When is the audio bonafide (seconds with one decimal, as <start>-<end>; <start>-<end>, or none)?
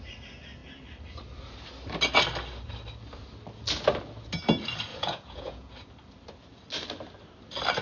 0.0-4.9; 5.7-7.8